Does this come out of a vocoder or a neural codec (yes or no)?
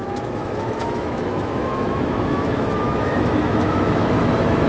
yes